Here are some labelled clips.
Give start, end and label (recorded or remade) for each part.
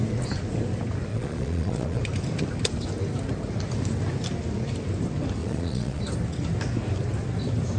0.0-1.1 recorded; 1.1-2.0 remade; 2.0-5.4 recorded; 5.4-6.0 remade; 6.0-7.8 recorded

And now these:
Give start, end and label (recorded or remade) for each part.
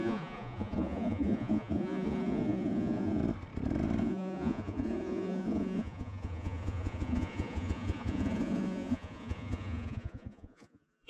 0.0-3.2 remade; 3.2-4.0 recorded; 4.0-11.1 remade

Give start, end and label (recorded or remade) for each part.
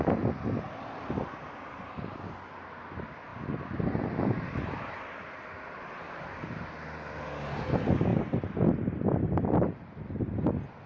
0.0-3.3 recorded; 3.3-6.2 remade; 6.2-8.1 recorded; 8.1-9.4 remade; 9.4-10.9 recorded